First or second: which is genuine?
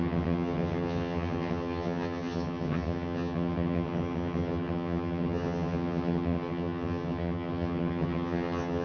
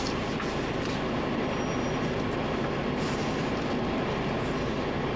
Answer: second